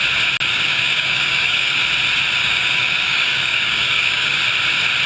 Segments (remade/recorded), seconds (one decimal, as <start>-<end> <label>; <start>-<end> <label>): 0.0-0.5 recorded; 0.5-1.8 remade; 1.8-2.4 recorded; 2.4-4.4 remade; 4.4-5.1 recorded